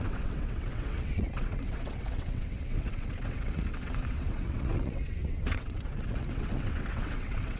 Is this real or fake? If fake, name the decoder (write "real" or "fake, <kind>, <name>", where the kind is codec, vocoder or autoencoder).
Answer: fake, vocoder, WaveNeXt